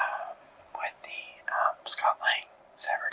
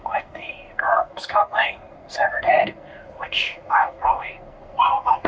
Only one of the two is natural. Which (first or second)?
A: first